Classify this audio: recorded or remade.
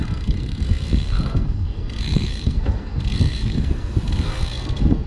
remade